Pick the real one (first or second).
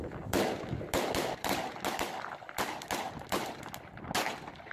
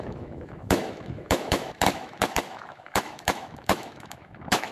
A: first